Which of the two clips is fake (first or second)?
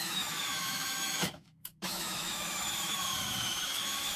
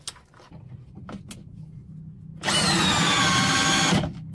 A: first